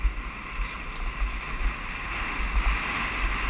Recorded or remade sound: recorded